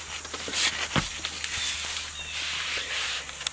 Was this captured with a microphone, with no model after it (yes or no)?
yes